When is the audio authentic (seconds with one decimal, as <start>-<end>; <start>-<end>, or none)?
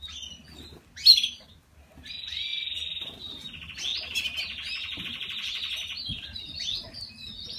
0.0-7.6